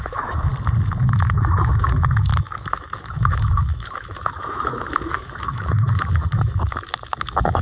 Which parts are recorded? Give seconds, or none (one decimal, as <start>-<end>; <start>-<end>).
0.5-1.0